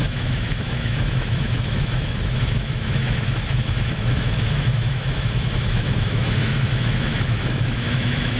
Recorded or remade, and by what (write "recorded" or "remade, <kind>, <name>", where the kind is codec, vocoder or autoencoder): remade, autoencoder, DAC-VAE